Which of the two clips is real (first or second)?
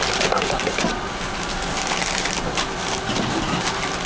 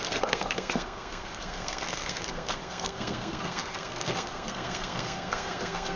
first